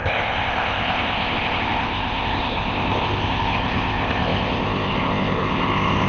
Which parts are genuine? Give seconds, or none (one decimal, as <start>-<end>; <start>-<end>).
none